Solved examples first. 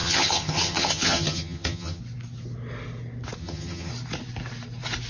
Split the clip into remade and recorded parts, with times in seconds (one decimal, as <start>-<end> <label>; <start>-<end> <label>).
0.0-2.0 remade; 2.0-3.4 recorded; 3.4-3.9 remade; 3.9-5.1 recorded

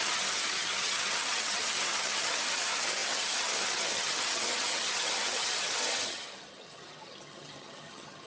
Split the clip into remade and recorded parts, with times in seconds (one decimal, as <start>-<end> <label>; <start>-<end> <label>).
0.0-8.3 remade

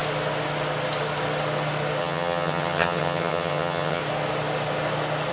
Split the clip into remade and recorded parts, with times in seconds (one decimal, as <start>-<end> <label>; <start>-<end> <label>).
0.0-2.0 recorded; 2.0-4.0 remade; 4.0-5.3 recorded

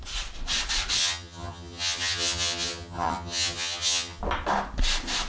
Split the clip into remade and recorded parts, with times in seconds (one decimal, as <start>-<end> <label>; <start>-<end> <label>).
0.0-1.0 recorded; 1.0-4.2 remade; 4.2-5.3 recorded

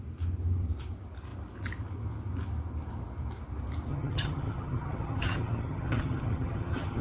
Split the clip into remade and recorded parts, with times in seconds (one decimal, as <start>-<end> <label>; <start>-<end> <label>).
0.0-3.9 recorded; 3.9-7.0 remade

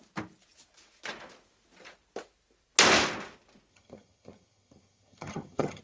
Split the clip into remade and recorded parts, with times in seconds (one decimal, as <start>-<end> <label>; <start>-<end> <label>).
0.0-3.7 recorded; 3.7-5.8 remade

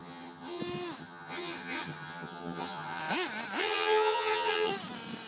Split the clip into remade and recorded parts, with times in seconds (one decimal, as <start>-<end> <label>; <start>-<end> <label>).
0.0-0.6 remade; 0.6-1.0 recorded; 1.0-3.0 remade; 3.0-3.6 recorded; 3.6-4.7 remade; 4.7-5.3 recorded

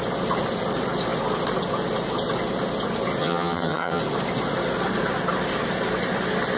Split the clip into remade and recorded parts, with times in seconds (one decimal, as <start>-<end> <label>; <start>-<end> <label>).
0.0-3.2 recorded; 3.2-4.0 remade; 4.0-6.6 recorded